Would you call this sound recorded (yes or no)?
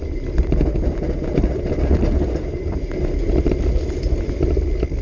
yes